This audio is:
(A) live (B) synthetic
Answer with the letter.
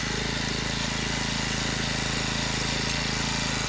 A